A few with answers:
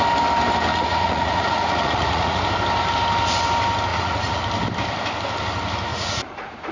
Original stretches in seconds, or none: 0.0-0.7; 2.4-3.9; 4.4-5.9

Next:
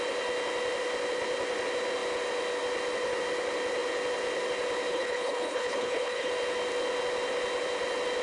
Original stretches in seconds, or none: 0.0-4.9; 6.3-8.2